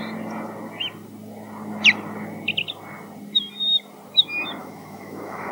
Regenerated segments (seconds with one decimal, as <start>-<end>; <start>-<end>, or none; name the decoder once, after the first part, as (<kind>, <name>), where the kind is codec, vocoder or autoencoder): 4.6-5.5 (autoencoder, DAC-VAE)